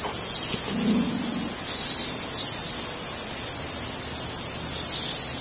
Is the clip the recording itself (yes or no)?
yes